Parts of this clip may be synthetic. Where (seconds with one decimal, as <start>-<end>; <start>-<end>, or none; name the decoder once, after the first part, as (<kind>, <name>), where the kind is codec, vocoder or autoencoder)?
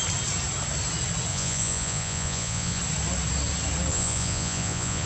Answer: 1.3-2.8 (vocoder, Vocos); 3.9-5.1